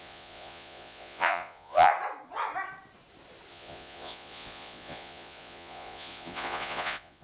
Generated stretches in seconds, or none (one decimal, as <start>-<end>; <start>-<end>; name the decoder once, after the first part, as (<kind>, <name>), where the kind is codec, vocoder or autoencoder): 0.0-1.9 (vocoder, Vocos); 3.5-7.2